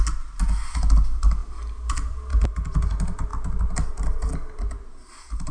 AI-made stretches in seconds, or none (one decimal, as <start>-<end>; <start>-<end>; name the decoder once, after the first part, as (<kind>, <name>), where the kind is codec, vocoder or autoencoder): none